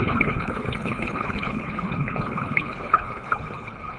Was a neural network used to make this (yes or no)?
yes